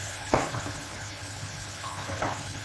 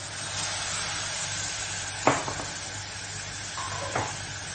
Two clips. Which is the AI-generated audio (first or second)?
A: first